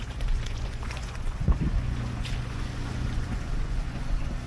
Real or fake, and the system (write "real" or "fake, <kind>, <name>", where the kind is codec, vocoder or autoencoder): fake, vocoder, Vocos